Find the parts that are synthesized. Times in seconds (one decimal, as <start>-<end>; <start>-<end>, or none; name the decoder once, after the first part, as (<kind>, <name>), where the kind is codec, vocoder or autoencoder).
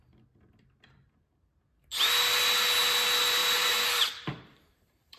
3.4-5.2 (vocoder, BigVGAN v2)